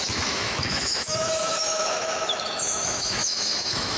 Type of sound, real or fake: fake